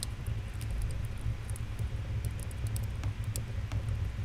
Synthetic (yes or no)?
no